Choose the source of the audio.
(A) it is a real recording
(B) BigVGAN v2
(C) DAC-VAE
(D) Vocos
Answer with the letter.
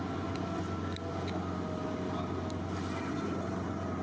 A